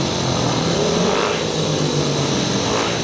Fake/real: real